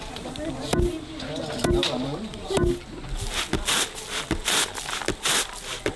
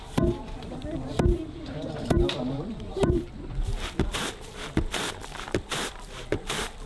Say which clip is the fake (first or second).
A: second